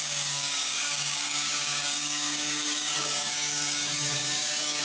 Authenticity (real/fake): fake